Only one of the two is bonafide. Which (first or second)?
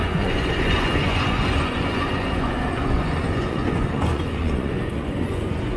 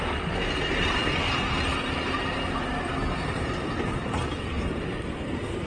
second